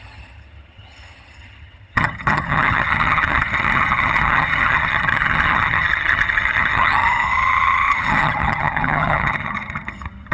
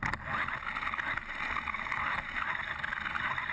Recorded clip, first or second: second